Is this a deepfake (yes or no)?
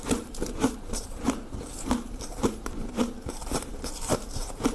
yes